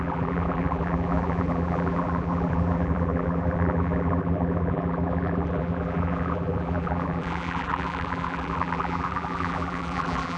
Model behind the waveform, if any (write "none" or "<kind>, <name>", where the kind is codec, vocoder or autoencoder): vocoder, BigVGAN v2